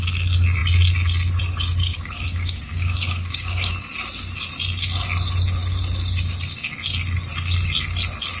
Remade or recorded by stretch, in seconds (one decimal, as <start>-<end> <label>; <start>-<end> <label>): 0.0-1.8 recorded; 1.8-3.7 remade; 3.7-8.4 recorded